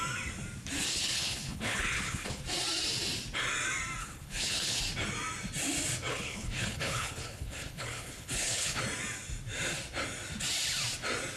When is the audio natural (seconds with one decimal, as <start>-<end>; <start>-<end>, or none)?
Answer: 0.0-0.9; 2.4-4.0; 4.8-6.1; 8.8-11.4